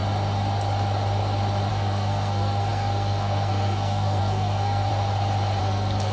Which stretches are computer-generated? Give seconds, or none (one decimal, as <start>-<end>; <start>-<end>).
1.7-4.9; 5.6-6.1

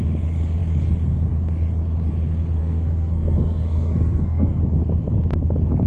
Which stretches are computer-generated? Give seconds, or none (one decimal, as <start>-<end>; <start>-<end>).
2.6-4.6